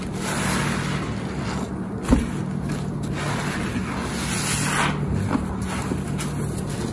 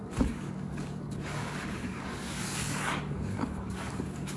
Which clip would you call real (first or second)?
first